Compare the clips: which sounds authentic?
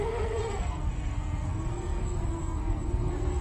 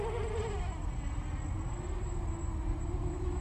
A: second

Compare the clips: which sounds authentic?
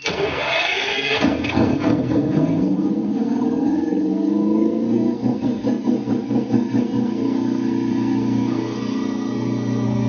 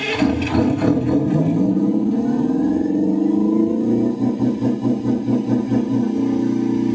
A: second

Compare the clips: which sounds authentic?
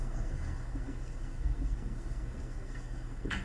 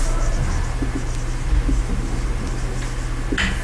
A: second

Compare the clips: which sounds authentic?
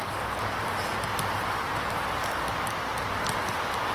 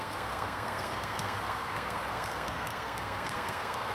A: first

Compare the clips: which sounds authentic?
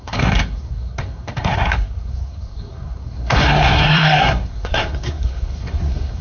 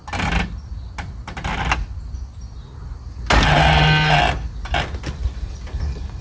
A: second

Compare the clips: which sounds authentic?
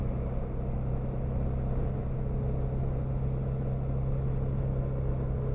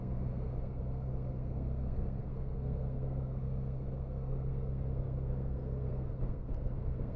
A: first